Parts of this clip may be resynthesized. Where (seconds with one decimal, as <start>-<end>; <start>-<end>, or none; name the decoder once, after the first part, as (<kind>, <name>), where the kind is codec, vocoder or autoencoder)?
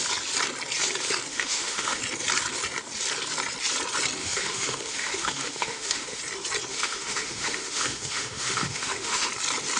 1.3-2.0 (autoencoder, DAC-VAE); 4.2-6.2; 6.7-9.3